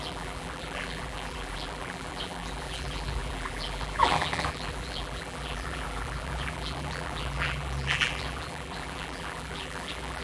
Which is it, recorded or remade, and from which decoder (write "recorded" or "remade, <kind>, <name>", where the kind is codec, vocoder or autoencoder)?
remade, vocoder, BigVGAN v2